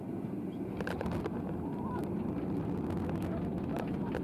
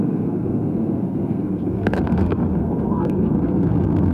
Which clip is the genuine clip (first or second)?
first